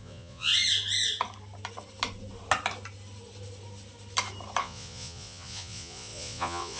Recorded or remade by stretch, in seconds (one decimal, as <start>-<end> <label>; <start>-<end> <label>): 0.0-0.5 remade; 0.5-4.6 recorded; 4.6-6.8 remade